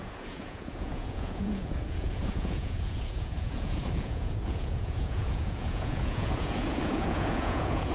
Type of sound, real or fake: fake